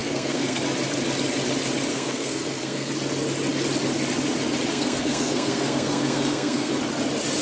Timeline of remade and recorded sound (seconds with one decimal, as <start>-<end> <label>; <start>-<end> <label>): 0.0-0.6 remade; 0.6-1.9 recorded; 1.9-2.9 remade; 2.9-4.7 recorded; 4.7-6.7 remade; 6.7-7.4 recorded